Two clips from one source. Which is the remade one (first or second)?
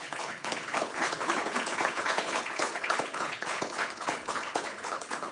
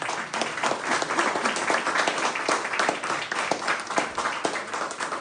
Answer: first